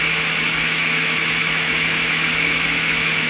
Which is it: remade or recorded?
remade